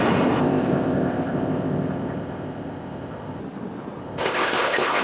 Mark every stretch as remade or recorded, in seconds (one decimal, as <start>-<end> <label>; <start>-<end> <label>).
0.0-0.4 recorded; 0.4-3.4 remade; 3.4-4.0 recorded; 4.0-5.0 remade